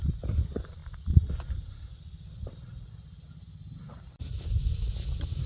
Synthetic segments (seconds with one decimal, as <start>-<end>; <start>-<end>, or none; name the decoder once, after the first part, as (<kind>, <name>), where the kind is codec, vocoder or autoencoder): none

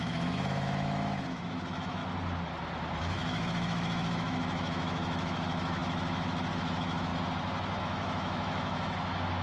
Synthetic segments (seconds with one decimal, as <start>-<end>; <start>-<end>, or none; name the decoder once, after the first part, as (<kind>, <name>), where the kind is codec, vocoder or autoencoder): 0.0-2.0 (autoencoder, DAC-VAE); 3.0-7.1; 7.8-9.4

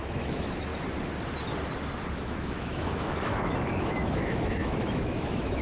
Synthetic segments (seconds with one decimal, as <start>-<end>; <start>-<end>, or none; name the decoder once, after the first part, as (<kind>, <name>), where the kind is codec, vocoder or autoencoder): 0.0-0.7 (autoencoder, DAC-VAE); 2.2-5.6

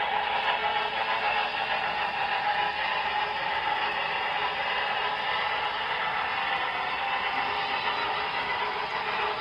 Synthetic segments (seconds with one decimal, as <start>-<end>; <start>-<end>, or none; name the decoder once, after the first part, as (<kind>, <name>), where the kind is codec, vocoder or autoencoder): 8.0-8.6 (autoencoder, DAC-VAE)

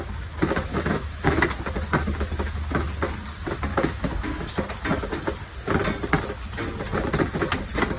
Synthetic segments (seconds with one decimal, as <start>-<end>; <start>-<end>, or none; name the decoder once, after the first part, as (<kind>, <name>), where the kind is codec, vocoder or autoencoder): 0.7-1.4 (autoencoder, DAC-VAE); 3.7-4.5

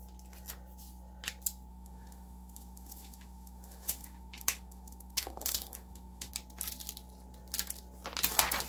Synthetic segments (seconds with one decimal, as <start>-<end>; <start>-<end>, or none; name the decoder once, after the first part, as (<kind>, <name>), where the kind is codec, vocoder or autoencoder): 1.7-6.3 (autoencoder, DAC-VAE)

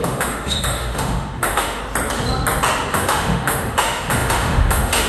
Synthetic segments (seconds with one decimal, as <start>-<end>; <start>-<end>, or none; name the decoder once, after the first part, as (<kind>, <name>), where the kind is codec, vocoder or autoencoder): 0.0-1.8 (autoencoder, DAC-VAE); 2.9-5.1

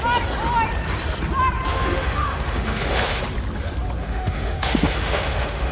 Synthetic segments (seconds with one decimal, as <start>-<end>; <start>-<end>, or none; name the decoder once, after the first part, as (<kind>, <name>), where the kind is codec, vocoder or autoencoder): 1.7-3.2 (autoencoder, DAC-VAE); 4.0-5.7